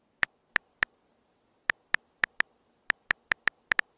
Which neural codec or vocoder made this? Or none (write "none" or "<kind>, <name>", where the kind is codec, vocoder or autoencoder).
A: none